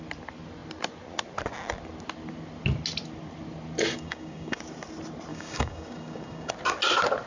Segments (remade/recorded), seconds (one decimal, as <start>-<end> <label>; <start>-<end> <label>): 0.0-3.9 recorded; 3.9-4.6 remade; 4.6-5.3 recorded; 5.3-6.5 remade; 6.5-7.3 recorded